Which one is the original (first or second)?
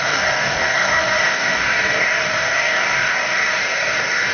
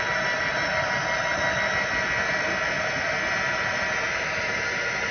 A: second